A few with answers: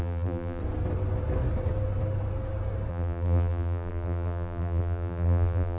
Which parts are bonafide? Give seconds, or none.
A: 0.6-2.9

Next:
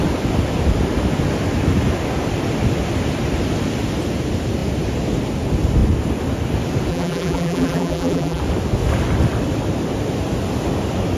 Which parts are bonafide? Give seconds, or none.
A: 0.0-6.9; 8.4-11.2

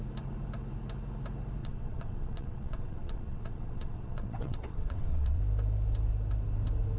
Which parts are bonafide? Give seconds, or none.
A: 0.0-1.6; 5.4-7.0

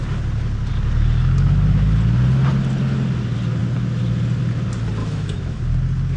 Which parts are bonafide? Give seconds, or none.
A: 0.0-5.0; 5.6-6.2